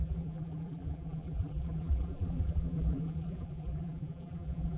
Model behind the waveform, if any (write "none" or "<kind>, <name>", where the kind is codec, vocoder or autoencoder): vocoder, BigVGAN v2